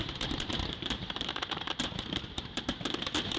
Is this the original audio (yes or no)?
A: no